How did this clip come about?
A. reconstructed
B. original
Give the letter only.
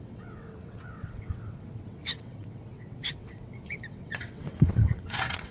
A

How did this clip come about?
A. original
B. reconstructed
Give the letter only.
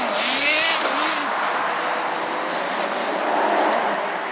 A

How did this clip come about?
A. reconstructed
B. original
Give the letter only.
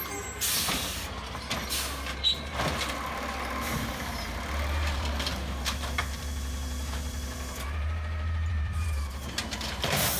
A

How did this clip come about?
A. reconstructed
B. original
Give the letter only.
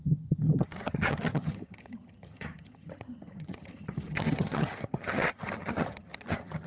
A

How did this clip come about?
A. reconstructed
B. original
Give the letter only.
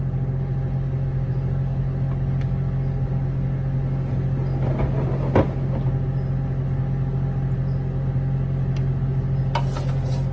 B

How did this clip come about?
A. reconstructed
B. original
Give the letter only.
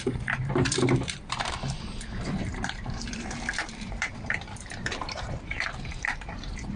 A